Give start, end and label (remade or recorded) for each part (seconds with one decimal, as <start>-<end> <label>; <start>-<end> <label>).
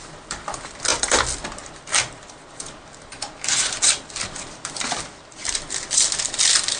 0.0-6.8 recorded